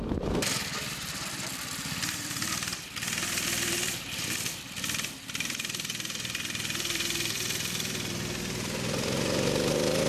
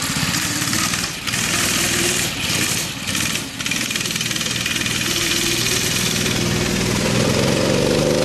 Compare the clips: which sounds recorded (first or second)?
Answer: second